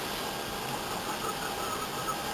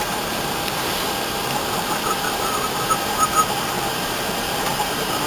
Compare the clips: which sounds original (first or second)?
first